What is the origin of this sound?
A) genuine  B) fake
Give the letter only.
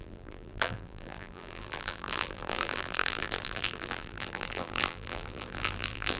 B